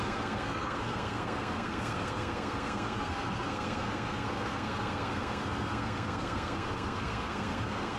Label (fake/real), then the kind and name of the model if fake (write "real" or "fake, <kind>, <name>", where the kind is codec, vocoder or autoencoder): fake, codec, SNAC